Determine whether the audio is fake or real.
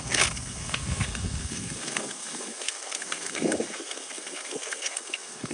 fake